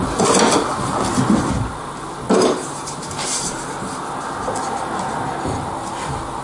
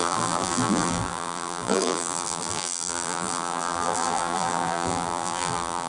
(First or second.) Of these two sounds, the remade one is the second